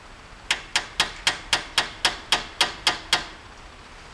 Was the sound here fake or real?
real